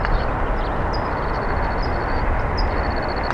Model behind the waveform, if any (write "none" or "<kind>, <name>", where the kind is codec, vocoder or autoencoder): none